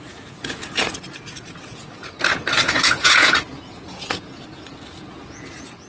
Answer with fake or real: fake